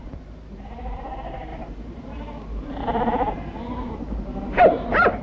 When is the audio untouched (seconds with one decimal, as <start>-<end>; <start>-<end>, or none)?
none